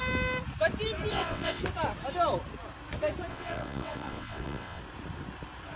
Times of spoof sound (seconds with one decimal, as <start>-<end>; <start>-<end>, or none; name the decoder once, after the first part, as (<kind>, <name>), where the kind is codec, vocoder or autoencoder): 1.1-1.6 (vocoder, WaveNeXt); 3.3-4.8